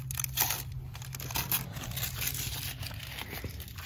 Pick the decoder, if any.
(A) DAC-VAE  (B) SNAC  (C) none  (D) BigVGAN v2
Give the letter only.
C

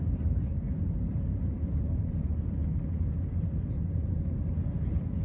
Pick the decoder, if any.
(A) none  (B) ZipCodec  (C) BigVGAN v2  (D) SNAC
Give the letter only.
C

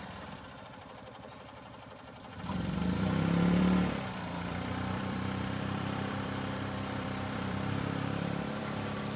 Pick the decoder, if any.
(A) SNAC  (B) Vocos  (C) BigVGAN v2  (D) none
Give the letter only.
C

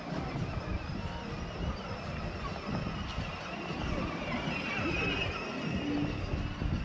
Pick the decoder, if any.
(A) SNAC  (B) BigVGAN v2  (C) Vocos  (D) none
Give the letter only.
D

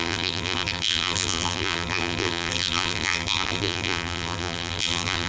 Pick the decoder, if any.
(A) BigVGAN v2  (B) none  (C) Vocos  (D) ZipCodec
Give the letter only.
A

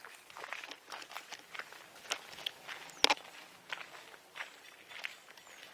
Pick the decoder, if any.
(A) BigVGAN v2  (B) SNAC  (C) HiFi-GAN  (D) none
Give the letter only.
D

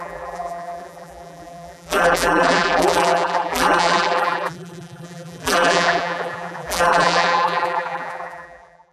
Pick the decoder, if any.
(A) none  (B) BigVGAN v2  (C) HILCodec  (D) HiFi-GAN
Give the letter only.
B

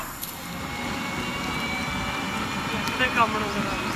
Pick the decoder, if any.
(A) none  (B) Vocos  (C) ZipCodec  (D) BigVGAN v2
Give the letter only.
D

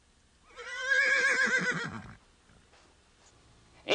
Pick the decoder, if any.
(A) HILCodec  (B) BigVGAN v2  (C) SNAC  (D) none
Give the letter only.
D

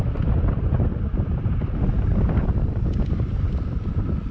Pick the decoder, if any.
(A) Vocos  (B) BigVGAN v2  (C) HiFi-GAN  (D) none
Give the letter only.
D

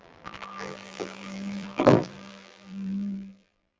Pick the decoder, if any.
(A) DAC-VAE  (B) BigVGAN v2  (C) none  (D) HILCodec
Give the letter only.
B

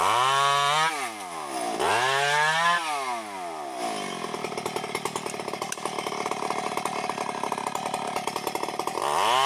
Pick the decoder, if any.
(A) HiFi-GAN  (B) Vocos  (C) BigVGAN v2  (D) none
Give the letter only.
D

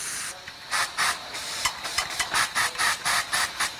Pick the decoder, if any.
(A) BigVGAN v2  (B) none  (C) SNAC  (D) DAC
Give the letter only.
A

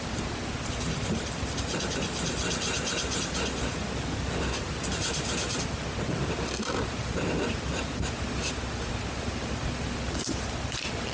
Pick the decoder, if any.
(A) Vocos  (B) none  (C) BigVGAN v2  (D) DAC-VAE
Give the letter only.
B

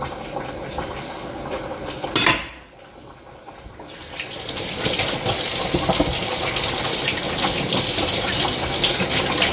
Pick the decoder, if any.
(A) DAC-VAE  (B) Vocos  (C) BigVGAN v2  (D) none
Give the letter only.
D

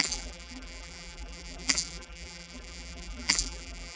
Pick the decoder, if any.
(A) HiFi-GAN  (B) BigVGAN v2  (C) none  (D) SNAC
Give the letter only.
B